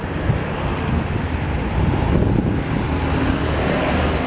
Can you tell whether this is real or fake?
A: fake